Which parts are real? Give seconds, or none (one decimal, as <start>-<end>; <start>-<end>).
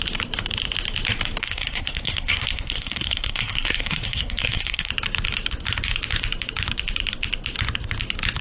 0.0-1.4; 4.9-8.4